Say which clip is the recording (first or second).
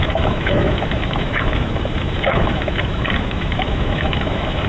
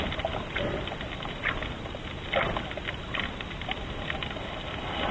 second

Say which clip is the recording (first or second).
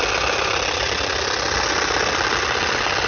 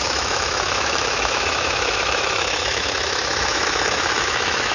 first